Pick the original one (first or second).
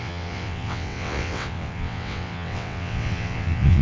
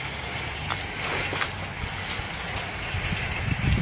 second